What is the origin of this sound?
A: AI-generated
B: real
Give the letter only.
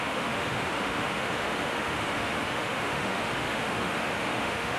A